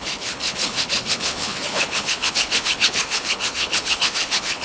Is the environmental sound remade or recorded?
remade